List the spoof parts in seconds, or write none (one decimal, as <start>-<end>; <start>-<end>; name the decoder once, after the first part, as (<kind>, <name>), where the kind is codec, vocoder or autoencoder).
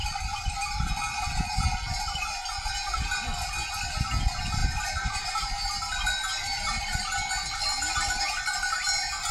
0.0-0.9 (vocoder, BigVGAN v2); 4.6-5.2; 6.4-7.0